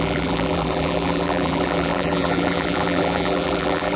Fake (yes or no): yes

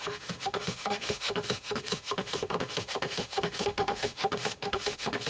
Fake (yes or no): yes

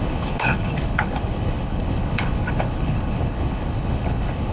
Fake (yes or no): yes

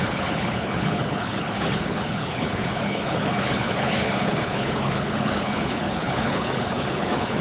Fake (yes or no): yes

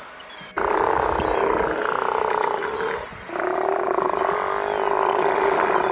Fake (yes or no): no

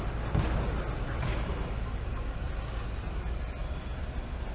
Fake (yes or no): no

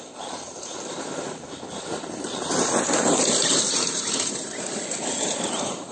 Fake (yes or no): yes